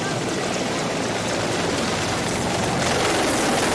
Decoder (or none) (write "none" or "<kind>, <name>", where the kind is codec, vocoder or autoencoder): none